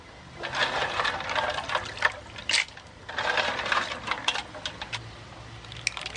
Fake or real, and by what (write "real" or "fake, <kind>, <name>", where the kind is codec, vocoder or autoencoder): real